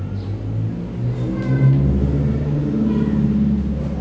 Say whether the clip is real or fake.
real